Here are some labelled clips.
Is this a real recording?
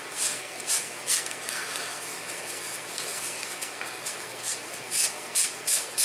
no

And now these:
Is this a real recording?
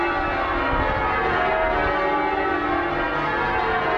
yes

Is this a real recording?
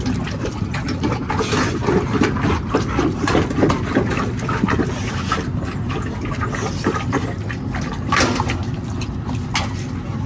yes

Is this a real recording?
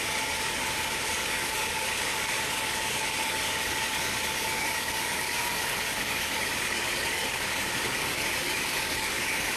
no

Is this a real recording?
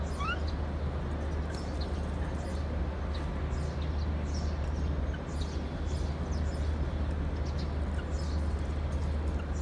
yes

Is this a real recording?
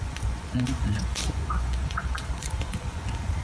no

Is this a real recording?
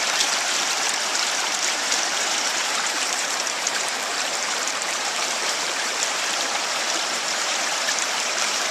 no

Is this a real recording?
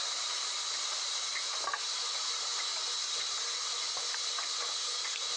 yes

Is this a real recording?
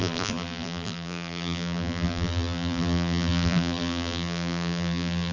no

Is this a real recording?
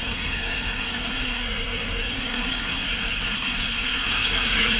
no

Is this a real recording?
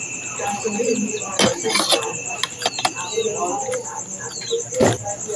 yes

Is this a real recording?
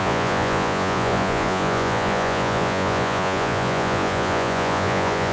no